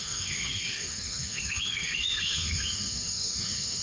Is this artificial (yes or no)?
yes